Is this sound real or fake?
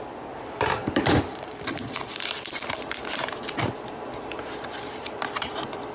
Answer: fake